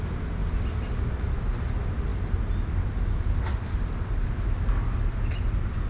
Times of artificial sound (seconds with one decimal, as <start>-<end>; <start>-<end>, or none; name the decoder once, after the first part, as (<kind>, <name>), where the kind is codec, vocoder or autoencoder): none